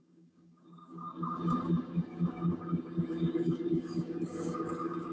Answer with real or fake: fake